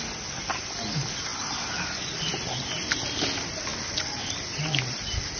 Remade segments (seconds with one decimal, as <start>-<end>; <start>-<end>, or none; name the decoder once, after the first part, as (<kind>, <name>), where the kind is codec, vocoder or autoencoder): none